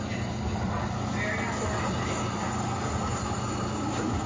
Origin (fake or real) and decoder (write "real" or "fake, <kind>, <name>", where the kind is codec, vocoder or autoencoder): real